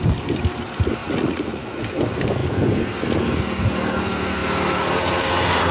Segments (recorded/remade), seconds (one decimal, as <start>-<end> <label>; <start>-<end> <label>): 0.0-1.0 recorded; 1.0-1.8 remade; 1.8-5.7 recorded